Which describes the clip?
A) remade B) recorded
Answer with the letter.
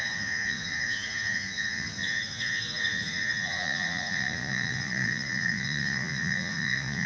A